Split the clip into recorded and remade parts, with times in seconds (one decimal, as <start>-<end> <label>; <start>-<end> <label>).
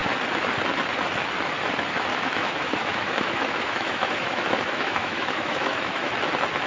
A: 0.0-2.1 recorded; 2.1-6.1 remade; 6.1-6.7 recorded